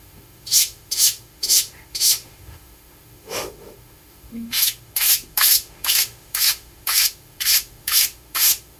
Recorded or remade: remade